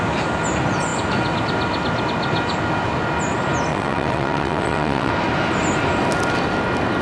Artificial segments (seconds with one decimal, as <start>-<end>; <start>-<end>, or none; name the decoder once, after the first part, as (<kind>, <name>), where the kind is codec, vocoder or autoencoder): 3.7-5.1 (vocoder, WaveNeXt)